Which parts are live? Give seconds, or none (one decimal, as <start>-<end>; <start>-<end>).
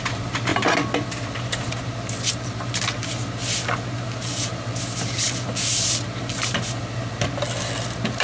0.0-8.2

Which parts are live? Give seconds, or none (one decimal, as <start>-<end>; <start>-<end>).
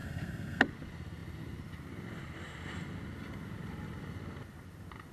0.6-5.1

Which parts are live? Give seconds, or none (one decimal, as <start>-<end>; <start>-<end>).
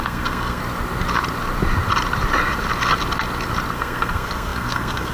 0.6-3.7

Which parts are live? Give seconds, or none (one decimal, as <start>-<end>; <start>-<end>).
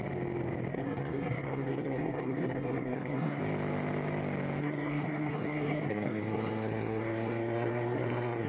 0.0-0.7; 3.4-4.6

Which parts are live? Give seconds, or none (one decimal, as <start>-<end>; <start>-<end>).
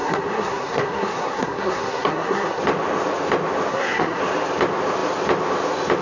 2.6-3.7; 4.2-6.0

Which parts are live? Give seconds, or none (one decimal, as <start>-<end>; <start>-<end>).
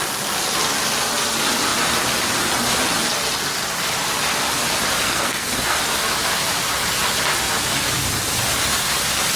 0.0-4.9; 5.8-9.4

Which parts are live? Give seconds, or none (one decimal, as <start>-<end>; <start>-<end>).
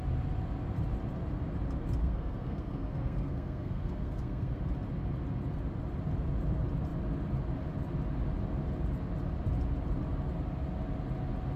0.0-2.0; 4.6-11.6